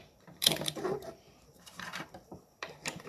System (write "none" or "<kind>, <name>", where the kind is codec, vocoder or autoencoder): vocoder, BigVGAN v2